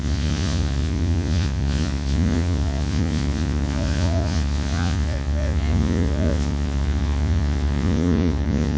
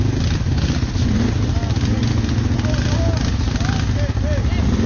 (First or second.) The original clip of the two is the second